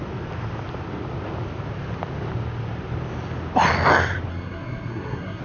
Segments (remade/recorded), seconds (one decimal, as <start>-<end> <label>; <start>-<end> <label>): 0.0-4.3 recorded; 4.3-5.4 remade